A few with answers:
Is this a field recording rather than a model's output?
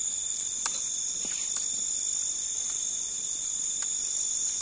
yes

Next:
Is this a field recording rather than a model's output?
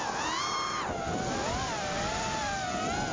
yes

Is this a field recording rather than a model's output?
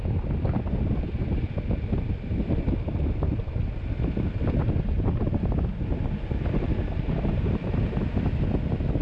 yes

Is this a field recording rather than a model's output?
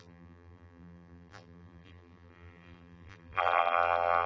no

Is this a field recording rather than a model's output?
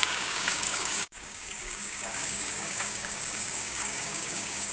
no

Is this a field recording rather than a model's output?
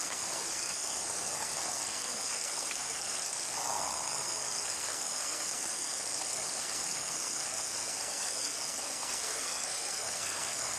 no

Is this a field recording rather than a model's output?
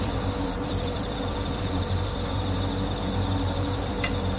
no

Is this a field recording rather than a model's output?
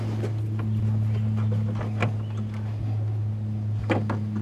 yes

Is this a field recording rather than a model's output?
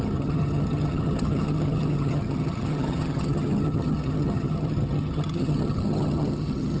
no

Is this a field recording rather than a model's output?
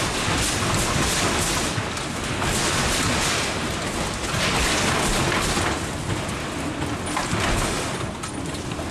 yes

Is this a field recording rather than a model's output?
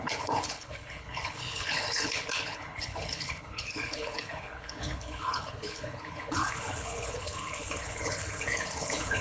no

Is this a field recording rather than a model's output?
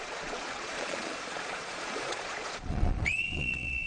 no